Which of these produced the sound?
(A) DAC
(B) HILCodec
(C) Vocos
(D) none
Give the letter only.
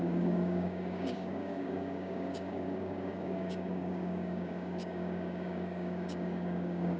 A